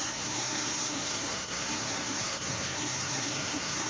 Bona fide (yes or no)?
no